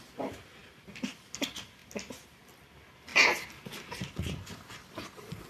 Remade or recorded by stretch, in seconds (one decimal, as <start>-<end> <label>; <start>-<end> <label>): 0.0-5.5 recorded